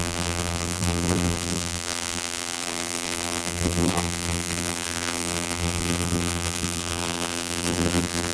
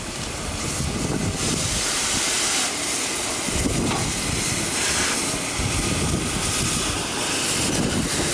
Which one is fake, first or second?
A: first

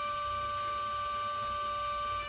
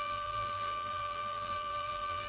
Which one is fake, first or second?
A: second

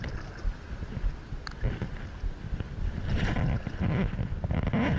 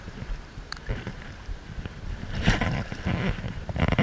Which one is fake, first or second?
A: second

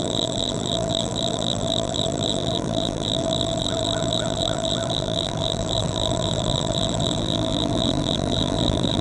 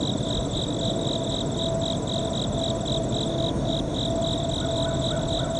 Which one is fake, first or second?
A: first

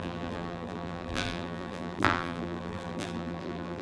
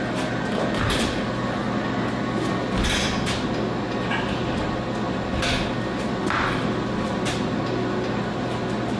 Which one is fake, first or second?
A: first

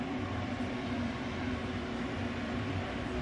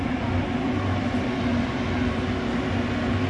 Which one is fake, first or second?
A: first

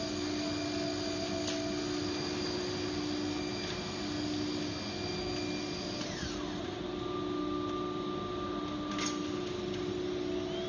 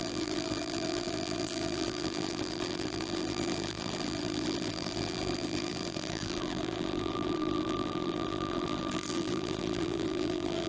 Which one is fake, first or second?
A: second